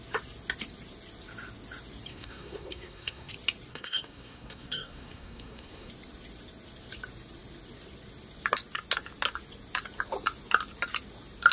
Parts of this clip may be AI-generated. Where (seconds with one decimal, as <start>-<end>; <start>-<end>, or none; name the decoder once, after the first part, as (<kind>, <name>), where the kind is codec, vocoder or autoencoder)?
2.1-3.3 (codec, SNAC); 3.7-5.9